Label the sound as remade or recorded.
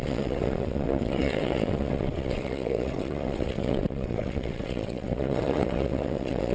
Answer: remade